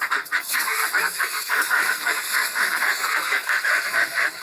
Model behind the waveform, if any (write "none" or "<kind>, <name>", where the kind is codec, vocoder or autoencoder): codec, SNAC